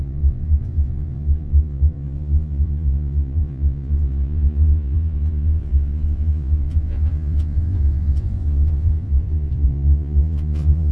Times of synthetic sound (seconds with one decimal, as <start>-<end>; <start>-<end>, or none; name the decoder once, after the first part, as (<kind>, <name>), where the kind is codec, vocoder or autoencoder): 0.0-10.9 (vocoder, Vocos)